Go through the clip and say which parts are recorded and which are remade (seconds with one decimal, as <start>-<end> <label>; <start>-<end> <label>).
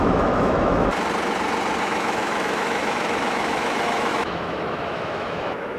0.0-0.9 remade; 0.9-1.8 recorded; 1.8-5.8 remade